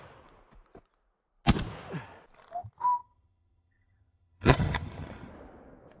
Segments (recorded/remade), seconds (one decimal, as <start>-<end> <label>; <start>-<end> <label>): 0.0-3.0 recorded; 3.0-5.3 remade; 5.3-6.0 recorded